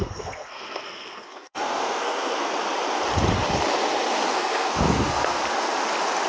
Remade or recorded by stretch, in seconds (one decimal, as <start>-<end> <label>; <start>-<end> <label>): 0.0-2.5 remade; 2.5-4.3 recorded; 4.3-5.4 remade; 5.4-6.3 recorded